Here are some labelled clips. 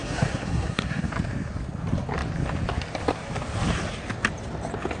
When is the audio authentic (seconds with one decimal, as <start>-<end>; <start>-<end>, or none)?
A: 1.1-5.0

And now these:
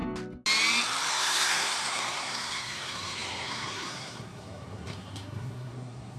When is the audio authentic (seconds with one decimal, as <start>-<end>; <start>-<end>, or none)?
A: 0.0-1.1

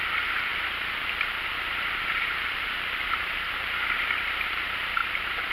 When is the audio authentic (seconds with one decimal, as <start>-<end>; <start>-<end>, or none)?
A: 0.0-5.5

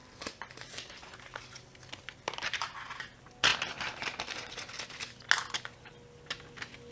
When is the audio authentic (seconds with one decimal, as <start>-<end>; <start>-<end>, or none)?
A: 0.0-6.9

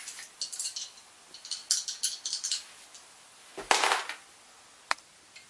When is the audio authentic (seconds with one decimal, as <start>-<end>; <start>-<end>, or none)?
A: 0.0-5.5

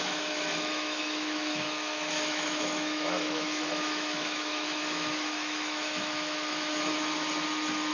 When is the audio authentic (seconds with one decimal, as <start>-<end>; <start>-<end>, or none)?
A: 6.9-7.9

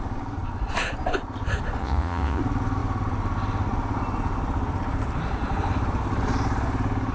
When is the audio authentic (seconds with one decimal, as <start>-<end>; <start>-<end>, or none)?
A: 0.0-1.8; 2.4-7.1

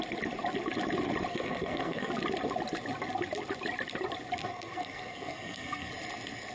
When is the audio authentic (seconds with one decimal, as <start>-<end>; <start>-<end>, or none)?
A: 0.0-1.3; 2.1-4.4; 5.9-6.5